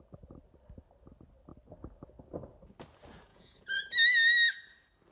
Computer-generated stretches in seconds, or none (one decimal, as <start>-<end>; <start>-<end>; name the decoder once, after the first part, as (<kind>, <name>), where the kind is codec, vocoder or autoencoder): 3.3-3.9 (vocoder, Vocos)